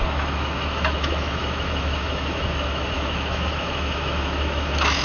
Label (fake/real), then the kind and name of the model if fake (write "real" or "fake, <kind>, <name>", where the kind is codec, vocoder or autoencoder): fake, autoencoder, DAC-VAE